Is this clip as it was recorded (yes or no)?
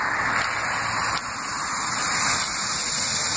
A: yes